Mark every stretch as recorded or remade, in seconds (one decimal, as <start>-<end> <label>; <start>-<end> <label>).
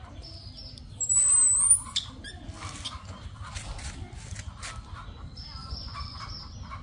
0.0-5.6 recorded; 5.6-6.2 remade; 6.2-6.8 recorded